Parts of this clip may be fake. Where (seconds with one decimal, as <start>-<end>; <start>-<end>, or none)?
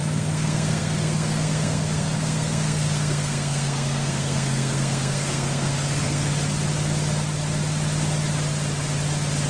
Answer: 0.0-6.3